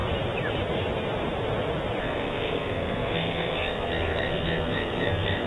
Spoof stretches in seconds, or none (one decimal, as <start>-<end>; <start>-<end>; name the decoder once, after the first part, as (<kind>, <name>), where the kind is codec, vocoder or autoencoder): 2.0-5.5 (codec, SNAC)

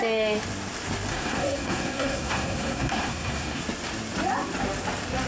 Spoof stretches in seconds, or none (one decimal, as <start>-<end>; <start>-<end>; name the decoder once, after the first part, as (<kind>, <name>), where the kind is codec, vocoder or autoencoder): 1.1-3.6 (codec, SNAC)

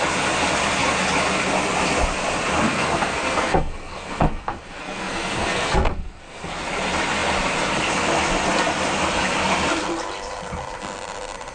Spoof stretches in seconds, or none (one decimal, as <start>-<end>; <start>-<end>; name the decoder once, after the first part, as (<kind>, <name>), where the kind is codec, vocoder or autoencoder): 2.7-6.5 (codec, SNAC)

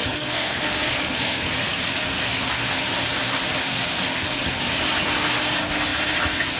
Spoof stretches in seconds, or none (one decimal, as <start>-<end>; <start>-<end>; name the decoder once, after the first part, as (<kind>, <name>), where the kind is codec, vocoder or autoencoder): 0.0-2.6 (codec, SNAC); 3.7-4.6

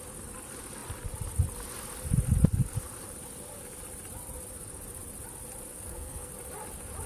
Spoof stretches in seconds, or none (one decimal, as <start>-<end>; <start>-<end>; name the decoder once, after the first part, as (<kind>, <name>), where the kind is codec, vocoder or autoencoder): 5.7-6.3 (codec, SNAC)